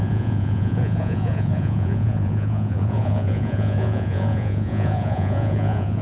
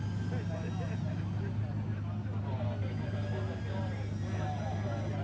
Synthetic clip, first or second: first